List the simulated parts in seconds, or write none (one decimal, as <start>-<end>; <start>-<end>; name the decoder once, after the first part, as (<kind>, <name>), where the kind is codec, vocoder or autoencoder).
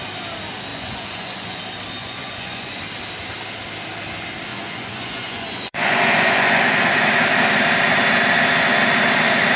0.7-1.6 (vocoder, Vocos); 2.0-2.8; 4.5-6.6